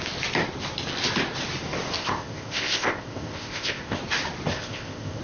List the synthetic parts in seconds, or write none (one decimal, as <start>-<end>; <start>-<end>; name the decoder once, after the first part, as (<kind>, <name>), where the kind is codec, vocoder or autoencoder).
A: 2.0-4.0 (codec, ZipCodec); 4.5-5.2